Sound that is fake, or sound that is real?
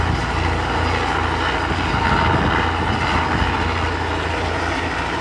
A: real